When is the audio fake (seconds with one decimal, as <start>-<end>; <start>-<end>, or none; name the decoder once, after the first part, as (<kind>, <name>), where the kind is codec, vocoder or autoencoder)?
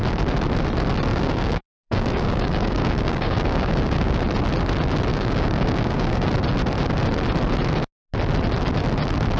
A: 1.1-4.2 (codec, DAC); 5.1-6.3